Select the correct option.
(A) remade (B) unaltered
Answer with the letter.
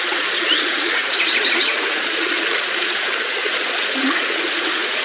A